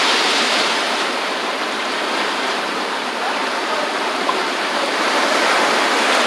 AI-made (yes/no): yes